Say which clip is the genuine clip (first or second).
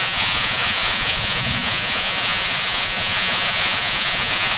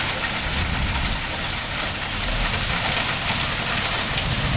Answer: second